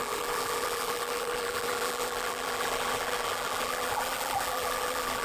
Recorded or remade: remade